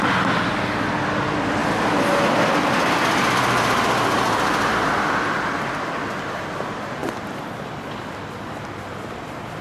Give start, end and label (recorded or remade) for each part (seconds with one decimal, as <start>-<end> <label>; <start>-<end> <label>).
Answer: 0.0-9.6 recorded